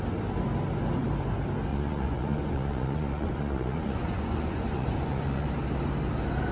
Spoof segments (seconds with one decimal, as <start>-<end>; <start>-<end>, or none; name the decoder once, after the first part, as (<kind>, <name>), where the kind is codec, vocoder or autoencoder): 1.7-5.5 (vocoder, Vocos)